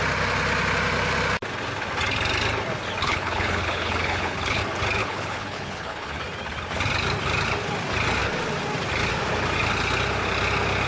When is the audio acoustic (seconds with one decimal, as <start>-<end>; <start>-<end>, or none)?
0.0-3.0; 4.6-5.0; 6.2-10.9